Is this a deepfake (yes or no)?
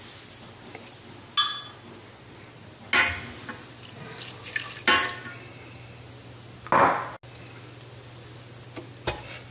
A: no